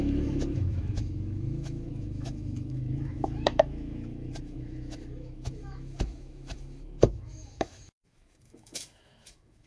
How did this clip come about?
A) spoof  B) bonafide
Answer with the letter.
A